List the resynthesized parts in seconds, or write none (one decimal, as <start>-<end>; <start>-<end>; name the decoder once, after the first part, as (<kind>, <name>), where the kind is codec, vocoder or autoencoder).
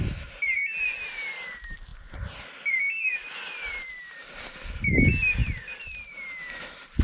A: none